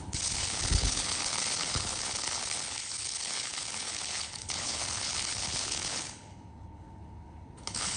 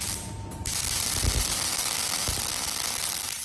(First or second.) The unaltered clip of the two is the second